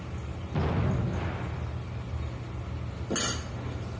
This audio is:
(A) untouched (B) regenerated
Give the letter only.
A